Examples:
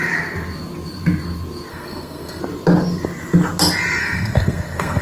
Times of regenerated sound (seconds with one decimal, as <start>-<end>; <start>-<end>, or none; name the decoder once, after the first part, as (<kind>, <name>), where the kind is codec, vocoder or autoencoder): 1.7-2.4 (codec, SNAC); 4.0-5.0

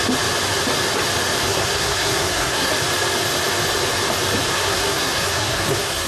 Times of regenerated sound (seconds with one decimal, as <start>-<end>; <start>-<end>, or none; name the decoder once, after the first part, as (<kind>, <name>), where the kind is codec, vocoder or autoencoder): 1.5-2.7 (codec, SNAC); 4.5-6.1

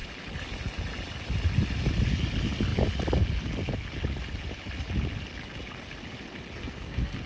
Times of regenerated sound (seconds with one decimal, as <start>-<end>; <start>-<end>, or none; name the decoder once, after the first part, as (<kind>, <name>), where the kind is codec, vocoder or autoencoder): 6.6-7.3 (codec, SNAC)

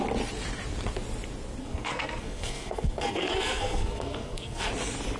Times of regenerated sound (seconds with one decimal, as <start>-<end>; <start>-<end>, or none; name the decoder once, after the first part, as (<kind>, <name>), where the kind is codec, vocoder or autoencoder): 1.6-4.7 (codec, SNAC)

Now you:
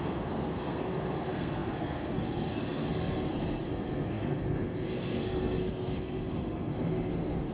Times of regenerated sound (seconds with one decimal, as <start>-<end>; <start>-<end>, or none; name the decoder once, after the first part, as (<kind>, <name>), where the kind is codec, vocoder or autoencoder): 0.0-7.5 (codec, SNAC)

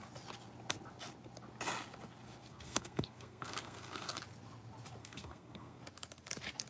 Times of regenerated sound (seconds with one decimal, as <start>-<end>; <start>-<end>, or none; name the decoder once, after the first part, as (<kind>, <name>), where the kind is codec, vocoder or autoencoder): 2.4-4.2 (codec, SNAC); 5.0-5.8